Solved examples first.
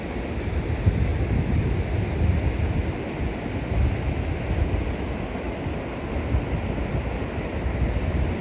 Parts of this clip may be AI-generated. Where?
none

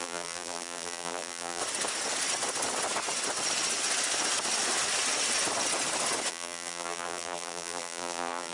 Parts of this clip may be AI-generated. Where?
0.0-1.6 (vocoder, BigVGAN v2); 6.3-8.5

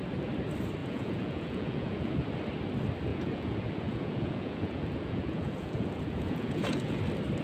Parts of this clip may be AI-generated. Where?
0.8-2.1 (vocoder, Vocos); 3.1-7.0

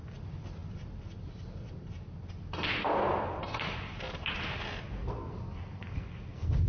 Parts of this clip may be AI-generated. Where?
5.0-6.7 (codec, SNAC)